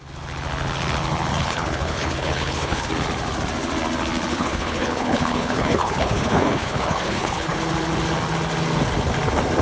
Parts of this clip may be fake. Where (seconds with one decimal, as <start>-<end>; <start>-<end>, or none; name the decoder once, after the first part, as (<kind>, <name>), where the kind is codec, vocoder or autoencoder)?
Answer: 1.3-2.9 (codec, HILCodec); 4.3-7.6